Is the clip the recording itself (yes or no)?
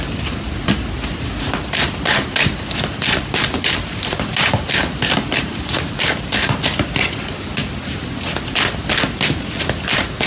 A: yes